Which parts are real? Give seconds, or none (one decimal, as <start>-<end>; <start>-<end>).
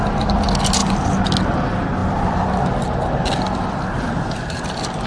0.0-5.1